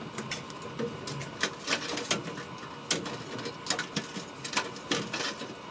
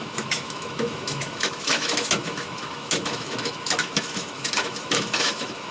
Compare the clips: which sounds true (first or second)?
first